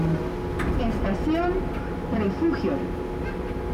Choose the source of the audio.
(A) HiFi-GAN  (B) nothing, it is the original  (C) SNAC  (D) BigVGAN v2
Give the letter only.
B